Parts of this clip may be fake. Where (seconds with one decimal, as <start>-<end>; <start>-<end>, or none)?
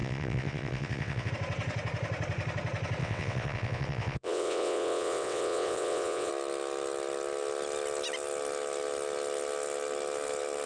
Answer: 0.0-1.3; 3.0-6.3